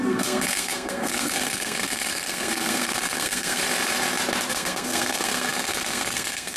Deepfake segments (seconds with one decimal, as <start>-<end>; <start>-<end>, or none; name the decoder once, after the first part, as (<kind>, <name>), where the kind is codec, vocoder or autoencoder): 0.0-3.6 (codec, SNAC); 4.5-6.6